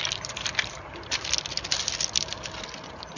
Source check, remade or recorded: recorded